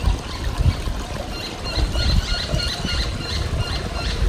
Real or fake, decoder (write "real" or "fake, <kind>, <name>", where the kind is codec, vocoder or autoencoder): real